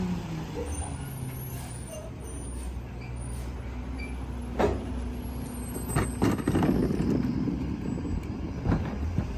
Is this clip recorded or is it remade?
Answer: recorded